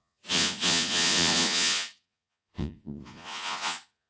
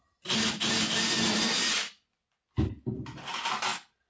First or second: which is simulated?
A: first